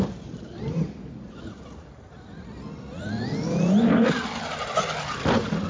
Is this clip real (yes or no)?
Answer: yes